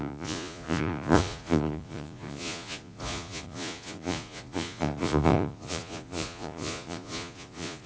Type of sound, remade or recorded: remade